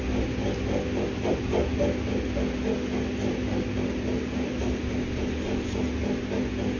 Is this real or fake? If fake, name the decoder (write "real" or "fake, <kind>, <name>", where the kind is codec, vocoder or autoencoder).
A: real